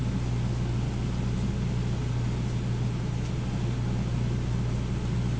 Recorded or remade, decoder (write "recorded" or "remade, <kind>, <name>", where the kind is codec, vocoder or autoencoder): recorded